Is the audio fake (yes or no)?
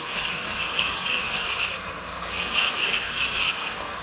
yes